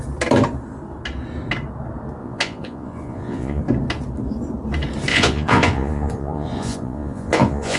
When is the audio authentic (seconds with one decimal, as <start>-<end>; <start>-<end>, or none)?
0.0-2.2; 3.6-5.1